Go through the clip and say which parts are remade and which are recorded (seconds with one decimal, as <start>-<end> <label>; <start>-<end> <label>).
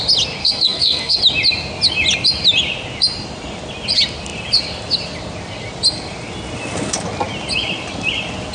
0.0-0.4 recorded; 0.4-1.2 remade; 1.2-8.5 recorded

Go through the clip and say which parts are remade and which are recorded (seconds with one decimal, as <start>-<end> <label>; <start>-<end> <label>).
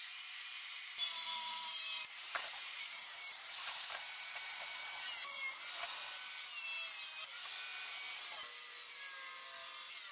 0.0-4.7 remade; 4.7-10.1 recorded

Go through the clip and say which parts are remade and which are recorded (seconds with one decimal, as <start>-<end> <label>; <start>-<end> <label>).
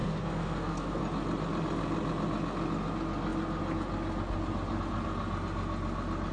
0.0-1.0 remade; 1.0-6.3 recorded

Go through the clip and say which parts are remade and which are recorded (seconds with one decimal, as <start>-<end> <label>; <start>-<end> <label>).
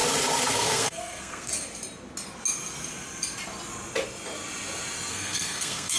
0.0-0.5 recorded; 0.5-1.5 remade; 1.5-5.1 recorded; 5.1-6.0 remade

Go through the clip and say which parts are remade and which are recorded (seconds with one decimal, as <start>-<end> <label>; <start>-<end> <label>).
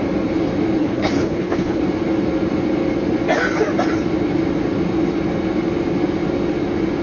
0.0-0.8 recorded; 0.8-1.8 remade; 1.8-7.0 recorded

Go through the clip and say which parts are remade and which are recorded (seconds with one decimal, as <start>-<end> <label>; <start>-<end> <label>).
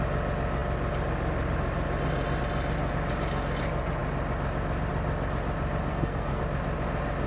0.0-5.9 recorded; 5.9-6.4 remade; 6.4-7.3 recorded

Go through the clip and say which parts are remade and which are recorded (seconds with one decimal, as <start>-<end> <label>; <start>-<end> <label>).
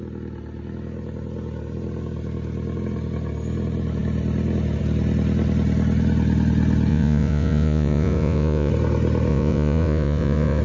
0.0-6.9 recorded; 6.9-8.7 remade; 8.7-9.3 recorded; 9.3-10.6 remade